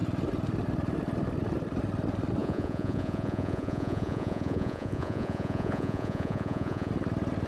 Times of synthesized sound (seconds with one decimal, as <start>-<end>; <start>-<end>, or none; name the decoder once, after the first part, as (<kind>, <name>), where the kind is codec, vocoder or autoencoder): 2.4-6.9 (vocoder, Vocos)